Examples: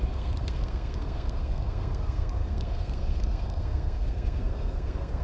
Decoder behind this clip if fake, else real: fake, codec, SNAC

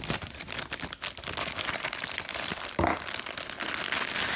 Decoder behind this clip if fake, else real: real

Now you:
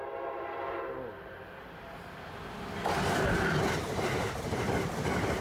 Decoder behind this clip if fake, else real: real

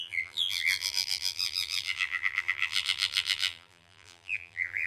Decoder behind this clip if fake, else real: fake, vocoder, BigVGAN v2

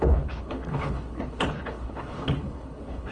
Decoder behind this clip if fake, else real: fake, codec, HILCodec